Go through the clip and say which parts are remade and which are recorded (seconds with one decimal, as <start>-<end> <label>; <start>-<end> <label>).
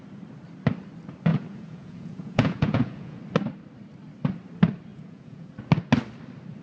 0.0-1.3 recorded; 1.3-3.2 remade; 3.2-4.9 recorded; 4.9-5.5 remade; 5.5-6.6 recorded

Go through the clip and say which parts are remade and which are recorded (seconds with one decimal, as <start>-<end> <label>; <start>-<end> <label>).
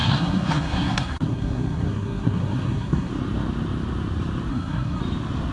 0.0-3.1 remade; 3.1-4.5 recorded; 4.5-5.0 remade; 5.0-5.5 recorded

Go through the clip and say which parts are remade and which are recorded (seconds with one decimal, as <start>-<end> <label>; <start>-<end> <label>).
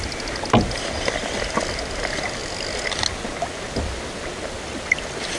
0.0-5.4 recorded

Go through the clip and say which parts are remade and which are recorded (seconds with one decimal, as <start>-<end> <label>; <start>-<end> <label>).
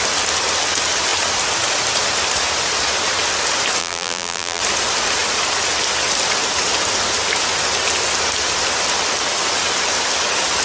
0.0-3.8 recorded; 3.8-4.6 remade; 4.6-10.6 recorded